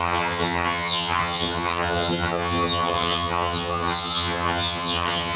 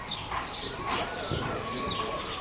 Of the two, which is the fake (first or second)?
first